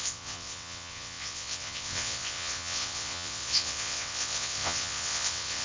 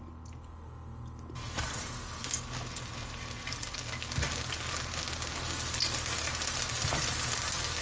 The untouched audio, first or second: second